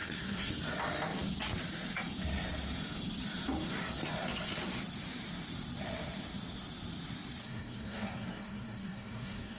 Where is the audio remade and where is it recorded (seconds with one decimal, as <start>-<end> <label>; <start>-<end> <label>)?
0.0-0.6 remade; 0.6-7.4 recorded; 7.4-9.6 remade